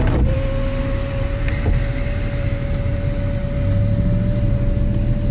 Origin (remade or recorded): recorded